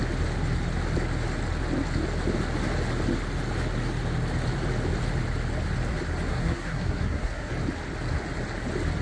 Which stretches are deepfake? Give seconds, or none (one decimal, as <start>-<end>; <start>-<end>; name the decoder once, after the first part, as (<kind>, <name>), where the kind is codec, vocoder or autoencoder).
6.3-7.5 (codec, SNAC)